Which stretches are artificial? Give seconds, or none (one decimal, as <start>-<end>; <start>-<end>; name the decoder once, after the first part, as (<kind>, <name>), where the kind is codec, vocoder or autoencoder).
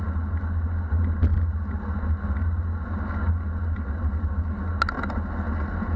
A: none